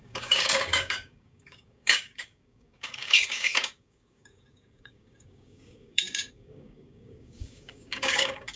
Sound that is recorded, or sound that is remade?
remade